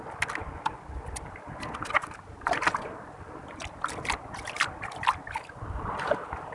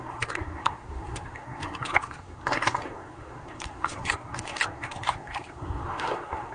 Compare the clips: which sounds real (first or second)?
first